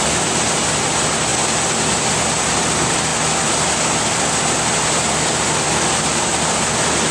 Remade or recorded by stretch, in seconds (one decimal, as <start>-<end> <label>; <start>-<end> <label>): 0.0-7.1 recorded